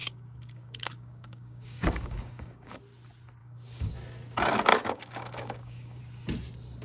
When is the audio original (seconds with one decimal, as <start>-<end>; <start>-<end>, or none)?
2.8-3.4; 3.9-4.7; 6.0-6.8